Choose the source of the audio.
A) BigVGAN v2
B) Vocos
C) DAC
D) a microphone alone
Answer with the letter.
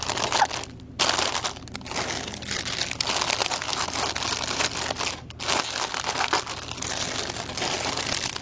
D